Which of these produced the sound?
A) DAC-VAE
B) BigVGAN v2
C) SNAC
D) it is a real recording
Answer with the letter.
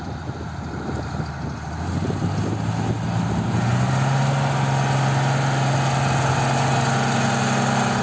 D